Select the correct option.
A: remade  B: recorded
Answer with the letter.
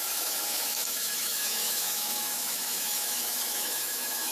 A